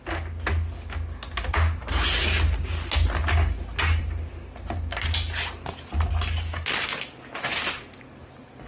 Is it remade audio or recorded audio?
recorded